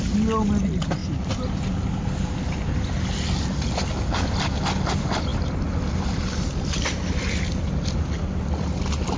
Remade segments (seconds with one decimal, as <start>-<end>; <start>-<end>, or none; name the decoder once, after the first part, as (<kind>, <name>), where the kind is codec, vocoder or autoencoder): none